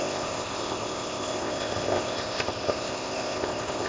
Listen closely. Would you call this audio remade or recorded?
remade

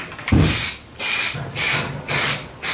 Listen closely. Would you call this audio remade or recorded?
recorded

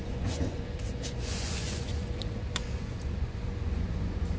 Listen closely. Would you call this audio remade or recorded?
remade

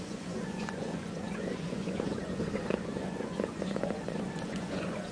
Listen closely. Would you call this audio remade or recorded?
remade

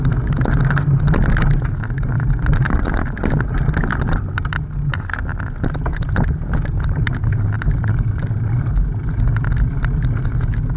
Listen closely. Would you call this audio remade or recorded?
recorded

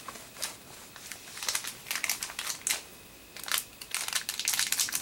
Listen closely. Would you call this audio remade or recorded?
recorded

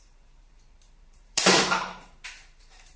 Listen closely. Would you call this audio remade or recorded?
remade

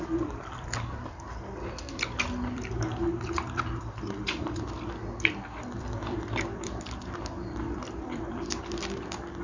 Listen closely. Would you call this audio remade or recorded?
remade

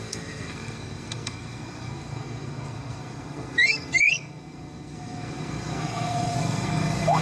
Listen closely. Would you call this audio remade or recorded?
remade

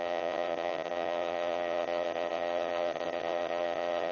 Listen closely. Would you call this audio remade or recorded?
remade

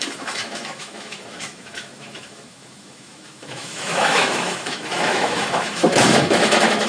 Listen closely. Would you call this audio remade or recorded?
remade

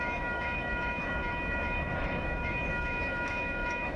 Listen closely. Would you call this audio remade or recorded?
remade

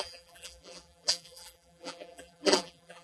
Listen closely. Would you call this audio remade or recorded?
remade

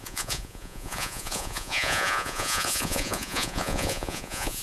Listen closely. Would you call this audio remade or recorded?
remade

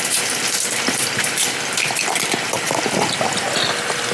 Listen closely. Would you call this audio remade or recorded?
recorded